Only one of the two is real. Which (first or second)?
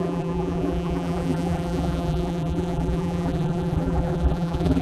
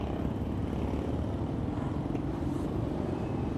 second